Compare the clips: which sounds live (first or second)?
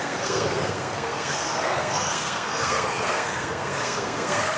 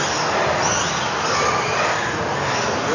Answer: second